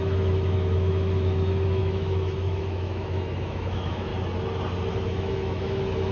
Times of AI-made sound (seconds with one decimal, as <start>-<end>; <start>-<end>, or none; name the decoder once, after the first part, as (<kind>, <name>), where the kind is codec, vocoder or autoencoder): 0.0-4.1 (autoencoder, DAC-VAE); 4.9-6.1